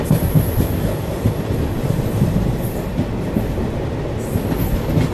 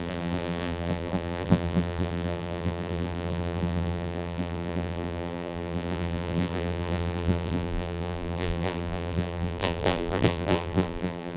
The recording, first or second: first